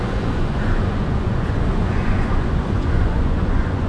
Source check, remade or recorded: remade